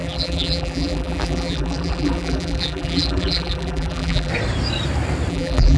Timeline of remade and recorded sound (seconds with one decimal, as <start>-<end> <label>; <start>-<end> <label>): 0.0-4.3 remade; 4.3-5.3 recorded; 5.3-5.8 remade